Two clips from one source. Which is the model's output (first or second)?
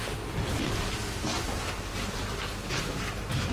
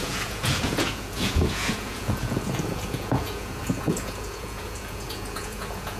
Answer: second